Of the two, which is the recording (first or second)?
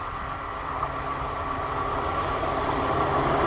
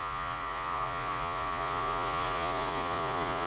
first